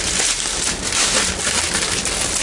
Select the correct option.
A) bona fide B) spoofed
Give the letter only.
A